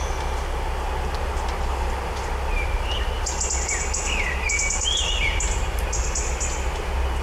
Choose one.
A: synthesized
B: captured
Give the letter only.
B